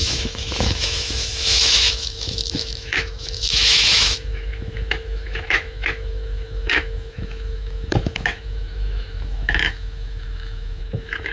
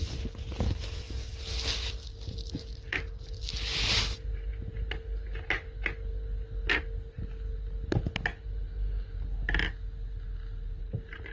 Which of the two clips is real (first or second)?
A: second